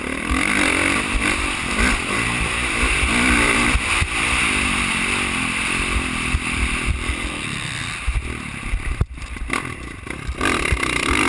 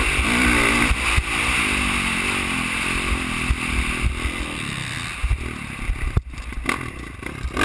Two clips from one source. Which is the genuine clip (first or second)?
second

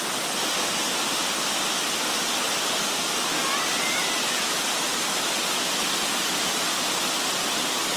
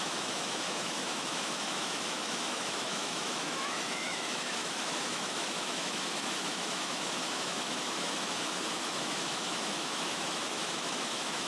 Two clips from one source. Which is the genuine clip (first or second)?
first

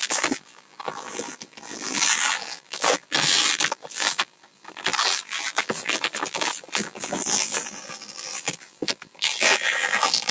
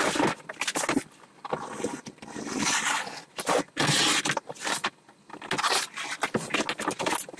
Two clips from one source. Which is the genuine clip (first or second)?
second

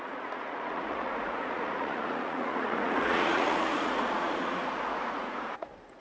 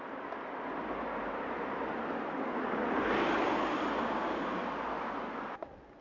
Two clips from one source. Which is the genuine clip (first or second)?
second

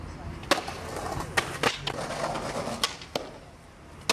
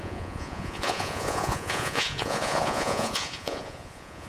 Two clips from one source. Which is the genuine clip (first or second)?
first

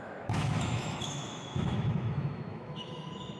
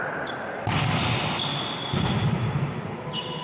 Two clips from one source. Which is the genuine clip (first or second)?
second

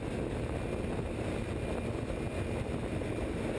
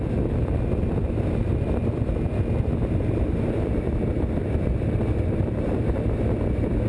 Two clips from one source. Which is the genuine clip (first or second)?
first